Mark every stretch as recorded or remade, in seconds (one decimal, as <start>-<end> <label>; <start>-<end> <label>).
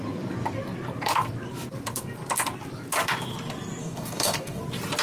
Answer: 0.0-3.8 recorded; 3.8-4.6 remade; 4.6-5.0 recorded